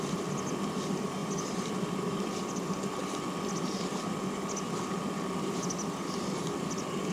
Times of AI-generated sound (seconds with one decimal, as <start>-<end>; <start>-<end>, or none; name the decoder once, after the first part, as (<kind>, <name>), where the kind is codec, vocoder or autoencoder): none